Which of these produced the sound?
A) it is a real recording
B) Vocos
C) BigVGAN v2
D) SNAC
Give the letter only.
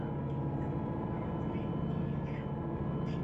A